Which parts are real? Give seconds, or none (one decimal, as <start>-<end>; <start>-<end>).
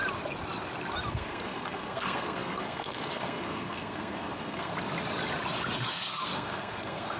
0.0-1.1; 4.7-5.9